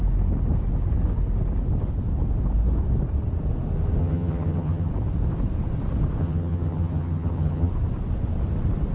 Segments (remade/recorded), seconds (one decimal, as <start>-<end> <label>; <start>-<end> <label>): 0.0-4.0 recorded; 4.0-4.9 remade; 4.9-6.2 recorded; 6.2-7.7 remade; 7.7-8.9 recorded